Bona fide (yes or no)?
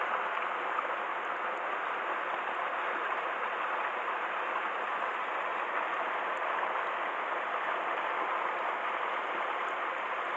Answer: yes